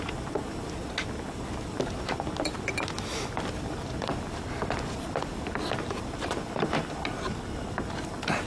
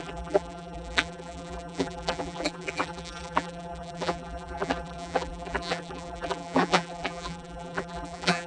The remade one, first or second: second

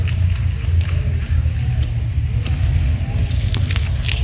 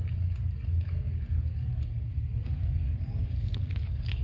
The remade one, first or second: second